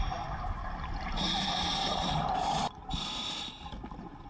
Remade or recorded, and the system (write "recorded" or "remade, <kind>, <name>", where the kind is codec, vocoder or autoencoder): recorded